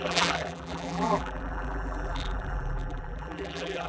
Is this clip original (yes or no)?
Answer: no